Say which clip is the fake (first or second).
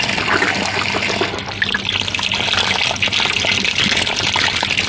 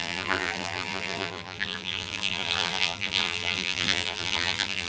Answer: second